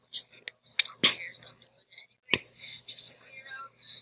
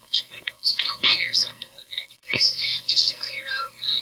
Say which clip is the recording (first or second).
first